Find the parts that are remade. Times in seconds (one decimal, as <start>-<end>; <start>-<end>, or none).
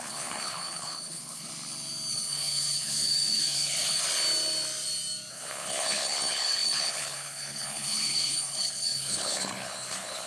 0.0-1.5; 2.1-4.0; 5.3-10.3